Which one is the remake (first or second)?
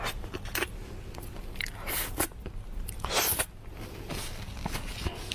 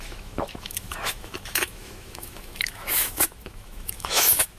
second